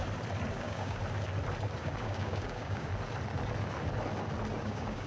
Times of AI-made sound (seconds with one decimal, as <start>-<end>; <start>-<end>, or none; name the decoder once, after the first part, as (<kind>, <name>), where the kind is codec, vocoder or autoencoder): 0.5-1.0 (codec, DAC); 1.8-2.9; 4.6-5.1